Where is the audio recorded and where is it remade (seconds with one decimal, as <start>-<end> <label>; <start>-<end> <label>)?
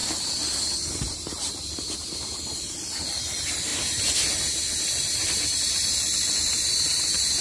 0.0-1.3 recorded; 1.3-3.7 remade; 3.7-5.3 recorded; 5.3-7.4 remade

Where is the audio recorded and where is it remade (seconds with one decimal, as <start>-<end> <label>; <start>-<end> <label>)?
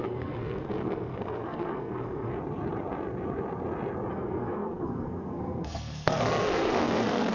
0.0-2.3 remade; 2.3-4.1 recorded; 4.1-7.3 remade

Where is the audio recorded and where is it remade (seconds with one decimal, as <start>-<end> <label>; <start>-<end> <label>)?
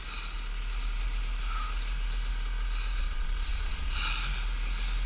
0.0-3.0 recorded; 3.0-4.0 remade; 4.0-5.1 recorded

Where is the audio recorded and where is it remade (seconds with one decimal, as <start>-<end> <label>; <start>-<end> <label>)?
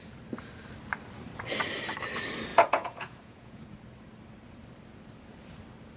0.0-2.5 recorded; 2.5-3.6 remade; 3.6-6.0 recorded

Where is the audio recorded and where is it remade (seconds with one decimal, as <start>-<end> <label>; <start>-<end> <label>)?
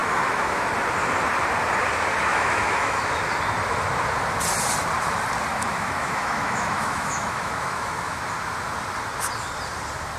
0.0-0.7 remade; 0.7-2.3 recorded; 2.3-3.2 remade; 3.2-5.5 recorded; 5.5-8.2 remade; 8.2-10.2 recorded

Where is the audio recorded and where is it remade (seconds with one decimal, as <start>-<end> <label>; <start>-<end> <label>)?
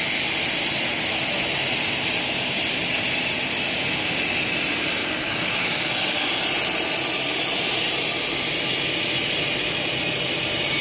0.0-5.0 recorded; 5.0-6.4 remade; 6.4-10.8 recorded